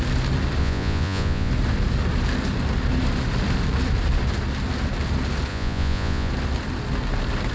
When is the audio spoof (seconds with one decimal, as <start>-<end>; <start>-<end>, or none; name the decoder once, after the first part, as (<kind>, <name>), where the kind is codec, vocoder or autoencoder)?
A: 0.6-1.5 (vocoder, Vocos); 5.5-6.3